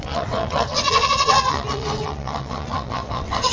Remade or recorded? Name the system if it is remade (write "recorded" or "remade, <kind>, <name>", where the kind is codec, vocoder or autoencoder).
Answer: remade, vocoder, WaveNeXt